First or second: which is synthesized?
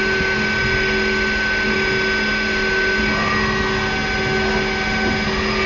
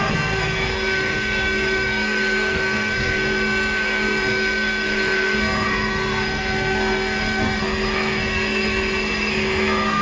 second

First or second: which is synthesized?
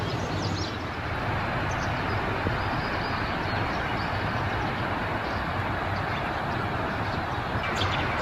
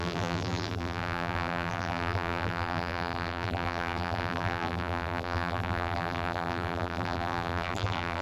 second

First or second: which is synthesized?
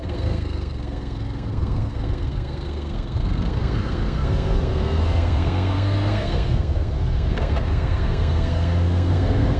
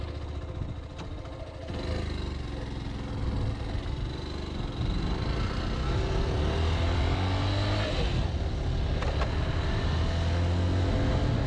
first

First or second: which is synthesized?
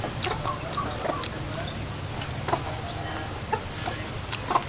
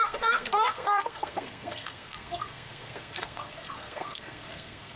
second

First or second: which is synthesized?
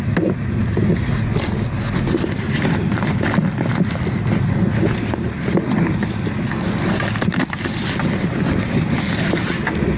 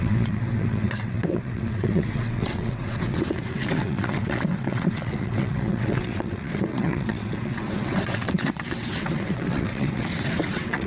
second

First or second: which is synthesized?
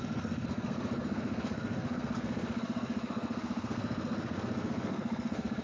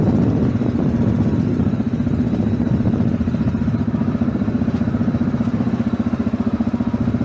first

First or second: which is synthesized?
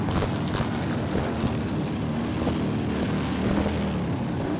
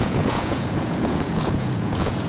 second